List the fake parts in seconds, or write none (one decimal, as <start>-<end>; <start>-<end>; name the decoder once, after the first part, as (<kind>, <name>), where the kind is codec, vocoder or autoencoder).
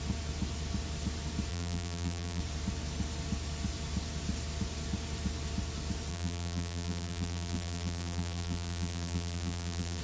1.5-2.4 (vocoder, BigVGAN v2); 6.1-10.0